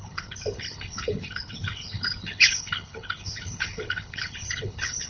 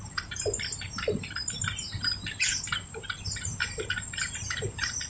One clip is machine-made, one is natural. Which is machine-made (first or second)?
first